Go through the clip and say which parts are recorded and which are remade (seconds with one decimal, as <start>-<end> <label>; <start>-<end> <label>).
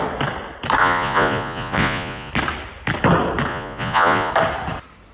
0.0-0.8 recorded; 0.8-2.3 remade; 2.3-3.5 recorded; 3.5-4.3 remade; 4.3-5.1 recorded